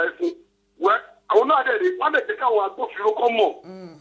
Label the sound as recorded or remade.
recorded